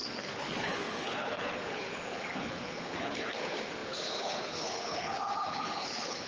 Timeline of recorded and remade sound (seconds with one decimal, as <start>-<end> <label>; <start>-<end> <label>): 0.0-6.3 remade

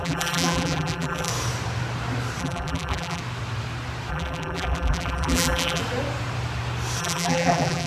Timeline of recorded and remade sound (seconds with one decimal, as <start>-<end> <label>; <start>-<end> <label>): 0.0-1.3 remade; 1.3-2.4 recorded; 2.4-3.2 remade; 3.2-4.1 recorded; 4.1-5.8 remade; 5.8-7.0 recorded; 7.0-7.9 remade